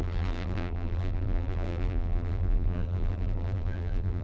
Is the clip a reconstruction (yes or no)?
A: yes